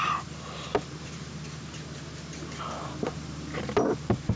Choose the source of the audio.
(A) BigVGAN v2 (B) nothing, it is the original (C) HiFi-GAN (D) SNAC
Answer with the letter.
B